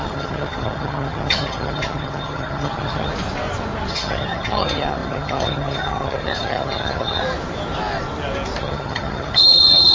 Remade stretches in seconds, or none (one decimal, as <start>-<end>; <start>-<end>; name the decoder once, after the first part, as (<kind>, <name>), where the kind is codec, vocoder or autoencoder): 0.0-3.1 (vocoder, HiFi-GAN); 3.9-7.2; 8.6-9.9